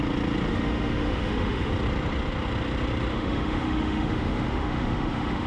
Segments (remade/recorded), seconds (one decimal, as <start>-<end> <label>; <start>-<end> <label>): 0.0-0.5 recorded; 0.5-1.7 remade; 1.7-3.1 recorded; 3.1-5.5 remade